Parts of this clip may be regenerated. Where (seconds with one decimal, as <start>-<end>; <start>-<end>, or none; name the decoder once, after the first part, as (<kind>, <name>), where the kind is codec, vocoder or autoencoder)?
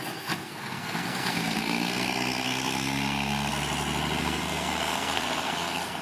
0.0-3.5 (codec, SNAC); 4.2-6.0